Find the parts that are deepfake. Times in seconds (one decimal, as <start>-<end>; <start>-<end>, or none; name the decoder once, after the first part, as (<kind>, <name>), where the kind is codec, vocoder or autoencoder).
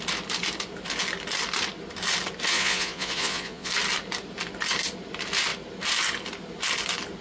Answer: 2.5-3.7 (vocoder, Vocos)